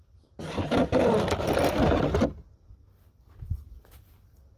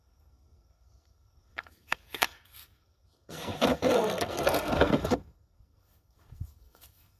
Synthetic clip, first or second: second